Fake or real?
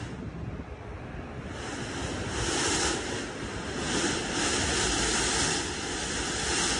real